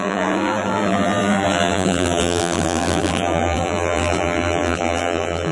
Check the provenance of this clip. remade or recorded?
remade